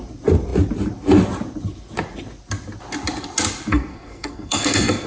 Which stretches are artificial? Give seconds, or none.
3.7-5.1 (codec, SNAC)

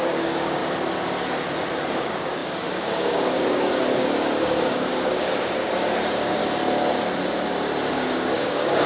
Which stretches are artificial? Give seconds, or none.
0.0-0.6 (codec, DAC); 1.9-6.4; 7.9-8.9

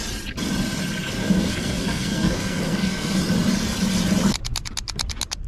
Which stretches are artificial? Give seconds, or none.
1.2-3.2 (codec, SNAC)

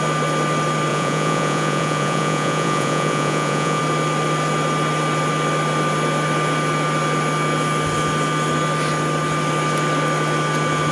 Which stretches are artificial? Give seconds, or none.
0.9-3.8 (vocoder, Vocos)